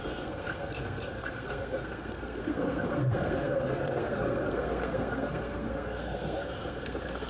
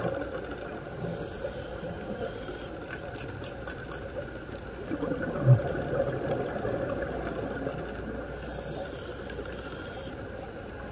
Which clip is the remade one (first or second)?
first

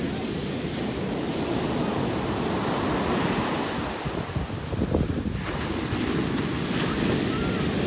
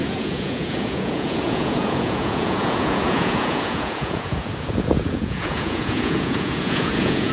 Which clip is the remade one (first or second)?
second